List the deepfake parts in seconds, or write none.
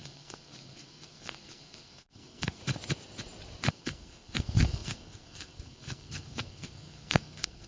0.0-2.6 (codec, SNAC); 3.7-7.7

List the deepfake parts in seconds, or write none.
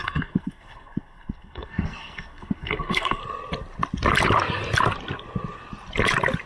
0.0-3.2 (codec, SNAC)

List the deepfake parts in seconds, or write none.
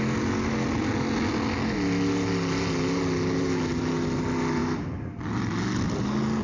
none